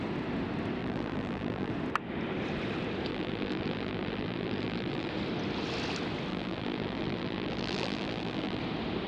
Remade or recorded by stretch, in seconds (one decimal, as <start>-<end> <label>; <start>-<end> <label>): 0.0-0.8 recorded; 0.8-1.7 remade; 1.7-3.1 recorded; 3.1-5.1 remade; 5.1-6.3 recorded; 6.3-8.6 remade; 8.6-9.1 recorded